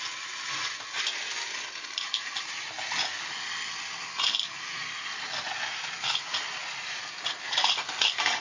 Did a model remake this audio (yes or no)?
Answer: no